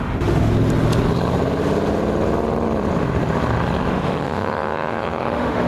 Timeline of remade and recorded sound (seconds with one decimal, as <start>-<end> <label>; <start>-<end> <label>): 0.0-0.5 remade; 0.5-3.9 recorded; 3.9-5.7 remade